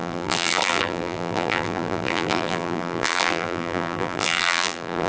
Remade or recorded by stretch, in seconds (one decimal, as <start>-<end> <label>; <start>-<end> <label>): 0.0-5.1 remade